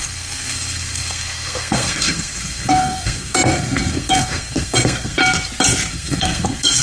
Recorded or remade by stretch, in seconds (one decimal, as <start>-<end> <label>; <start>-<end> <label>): 0.0-5.2 remade; 5.2-5.9 recorded; 5.9-6.8 remade